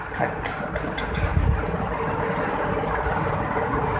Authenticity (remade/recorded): recorded